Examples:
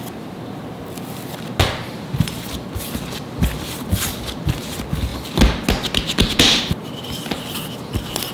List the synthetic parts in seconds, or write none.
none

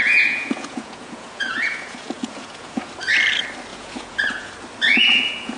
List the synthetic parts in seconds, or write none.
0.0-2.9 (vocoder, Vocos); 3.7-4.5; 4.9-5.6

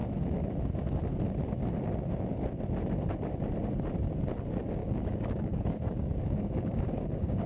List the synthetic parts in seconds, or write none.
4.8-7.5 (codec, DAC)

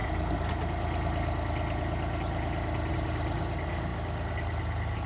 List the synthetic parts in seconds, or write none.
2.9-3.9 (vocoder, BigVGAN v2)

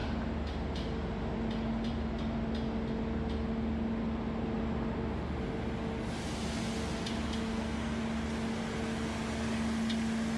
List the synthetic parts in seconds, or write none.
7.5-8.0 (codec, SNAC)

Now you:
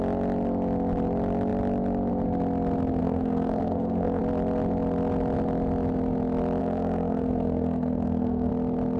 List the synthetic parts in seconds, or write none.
3.0-4.2 (codec, SNAC); 6.6-8.5